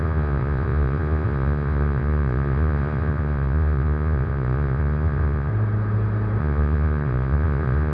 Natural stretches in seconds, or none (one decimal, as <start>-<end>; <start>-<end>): 5.5-6.4